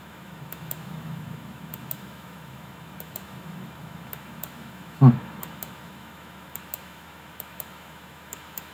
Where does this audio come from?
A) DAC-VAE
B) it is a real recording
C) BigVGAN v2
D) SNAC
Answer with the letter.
A